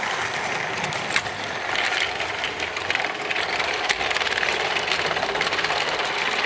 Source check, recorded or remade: recorded